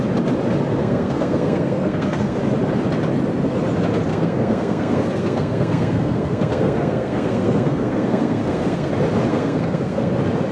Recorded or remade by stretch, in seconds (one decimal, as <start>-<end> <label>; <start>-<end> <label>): 0.0-0.8 recorded; 0.8-2.4 remade; 2.4-4.1 recorded; 4.1-8.9 remade; 8.9-9.3 recorded; 9.3-10.1 remade; 10.1-10.5 recorded